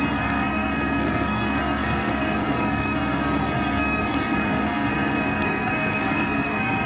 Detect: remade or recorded remade